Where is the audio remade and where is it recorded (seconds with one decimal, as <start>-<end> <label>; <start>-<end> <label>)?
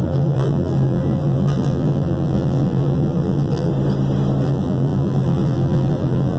0.0-3.7 remade; 3.7-4.4 recorded; 4.4-6.4 remade